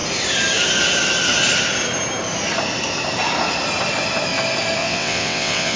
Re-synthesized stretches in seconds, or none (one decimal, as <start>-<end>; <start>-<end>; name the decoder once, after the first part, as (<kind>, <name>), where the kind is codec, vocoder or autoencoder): 4.8-5.8 (vocoder, WaveNeXt)